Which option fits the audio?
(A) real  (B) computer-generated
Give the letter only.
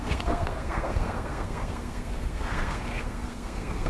B